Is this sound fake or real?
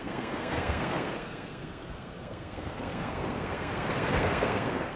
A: fake